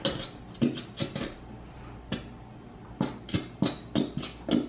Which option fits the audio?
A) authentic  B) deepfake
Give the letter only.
A